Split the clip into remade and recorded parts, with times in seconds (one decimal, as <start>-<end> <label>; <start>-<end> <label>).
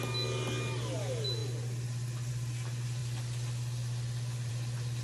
0.0-5.0 recorded